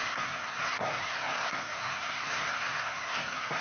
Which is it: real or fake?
fake